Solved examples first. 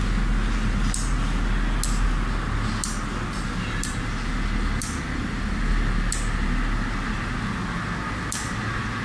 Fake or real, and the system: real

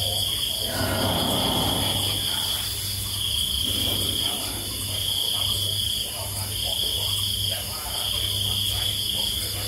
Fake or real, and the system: real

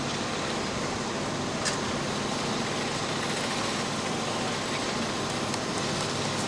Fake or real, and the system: real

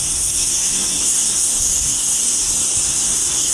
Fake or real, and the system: fake, codec, SNAC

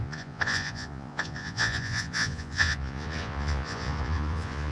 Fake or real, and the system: fake, vocoder, Vocos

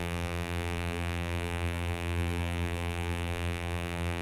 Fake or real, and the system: fake, vocoder, BigVGAN v2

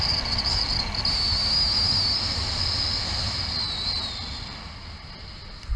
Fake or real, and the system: real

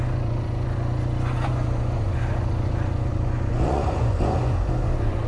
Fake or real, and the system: fake, vocoder, Vocos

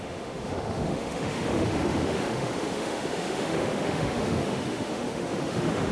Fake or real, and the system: fake, autoencoder, DAC-VAE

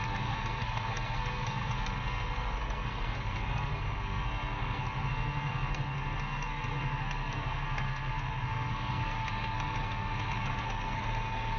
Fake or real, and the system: fake, codec, SNAC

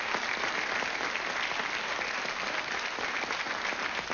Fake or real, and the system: real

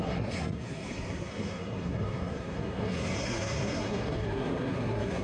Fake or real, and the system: fake, codec, SNAC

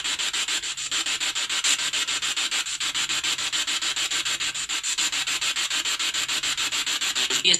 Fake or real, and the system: real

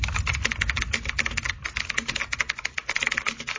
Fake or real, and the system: real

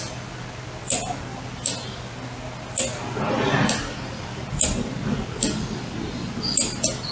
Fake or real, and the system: real